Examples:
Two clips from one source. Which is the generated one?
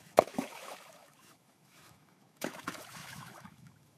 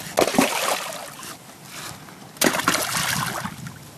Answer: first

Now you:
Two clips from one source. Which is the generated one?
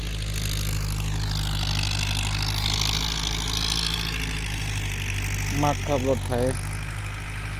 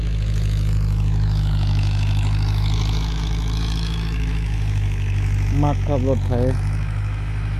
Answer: second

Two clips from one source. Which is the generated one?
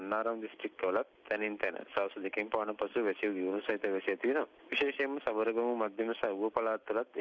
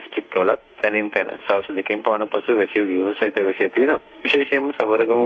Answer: second